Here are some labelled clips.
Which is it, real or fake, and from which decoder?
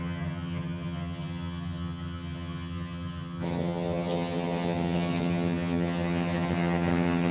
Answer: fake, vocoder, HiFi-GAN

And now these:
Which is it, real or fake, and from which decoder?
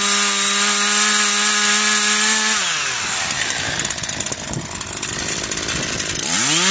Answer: real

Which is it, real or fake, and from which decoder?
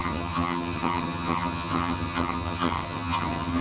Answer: fake, vocoder, HiFi-GAN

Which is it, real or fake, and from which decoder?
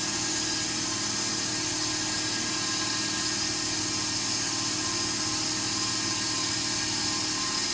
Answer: real